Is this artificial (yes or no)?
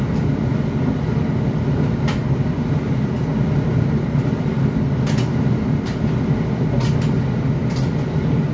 no